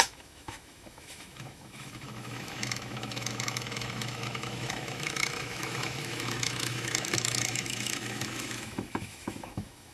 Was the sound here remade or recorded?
remade